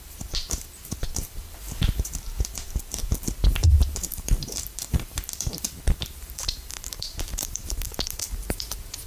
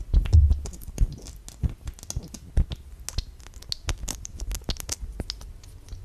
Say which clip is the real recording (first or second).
second